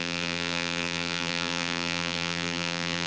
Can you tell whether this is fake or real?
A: fake